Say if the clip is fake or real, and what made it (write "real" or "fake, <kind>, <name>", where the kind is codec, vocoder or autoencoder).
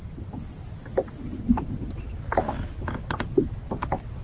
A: real